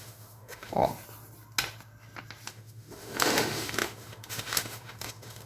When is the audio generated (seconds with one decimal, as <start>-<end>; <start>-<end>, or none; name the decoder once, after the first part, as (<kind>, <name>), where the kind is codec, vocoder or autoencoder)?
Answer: 0.0-0.9 (autoencoder, DAC-VAE); 2.5-5.5